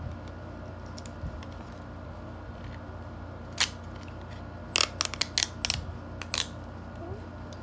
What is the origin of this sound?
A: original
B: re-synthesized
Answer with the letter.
A